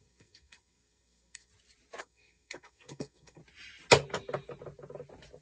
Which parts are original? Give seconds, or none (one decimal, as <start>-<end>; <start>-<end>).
1.5-2.0; 3.4-5.4